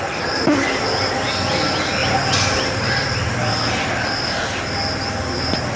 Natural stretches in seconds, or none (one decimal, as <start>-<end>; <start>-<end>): 0.0-5.8